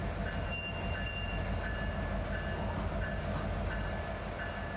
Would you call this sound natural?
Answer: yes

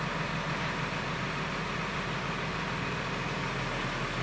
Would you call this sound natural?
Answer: yes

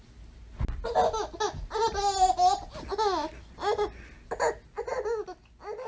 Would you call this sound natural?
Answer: yes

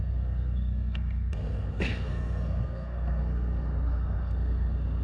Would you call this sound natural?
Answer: no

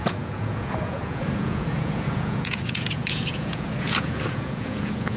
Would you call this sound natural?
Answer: no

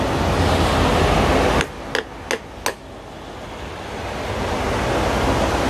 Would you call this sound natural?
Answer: yes